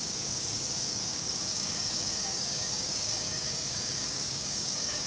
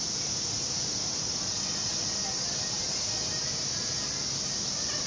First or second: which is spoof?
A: first